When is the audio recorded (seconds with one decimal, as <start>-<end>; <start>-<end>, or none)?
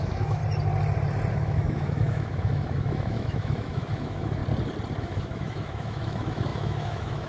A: 0.4-1.3; 4.4-5.0